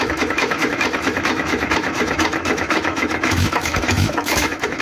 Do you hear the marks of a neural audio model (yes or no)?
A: yes